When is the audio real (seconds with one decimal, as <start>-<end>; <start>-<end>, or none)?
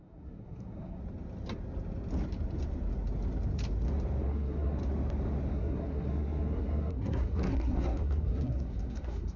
1.0-4.2; 4.8-5.5